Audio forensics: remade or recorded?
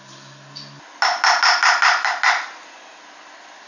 recorded